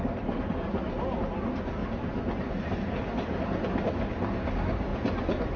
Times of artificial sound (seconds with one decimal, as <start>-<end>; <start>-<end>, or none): 1.8-2.5; 4.9-5.6